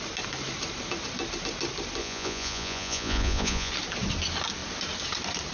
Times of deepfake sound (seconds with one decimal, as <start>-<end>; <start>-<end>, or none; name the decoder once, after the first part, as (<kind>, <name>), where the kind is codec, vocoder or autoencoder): 2.0-3.7 (vocoder, Vocos)